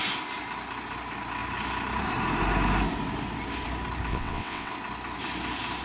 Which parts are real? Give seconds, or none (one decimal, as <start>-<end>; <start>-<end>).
0.0-4.1; 4.7-5.8